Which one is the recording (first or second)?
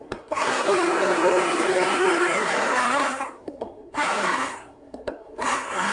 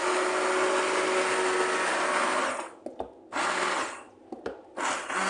second